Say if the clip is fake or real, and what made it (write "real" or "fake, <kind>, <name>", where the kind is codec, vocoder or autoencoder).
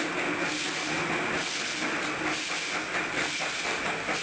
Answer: real